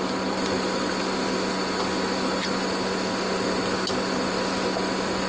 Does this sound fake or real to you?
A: real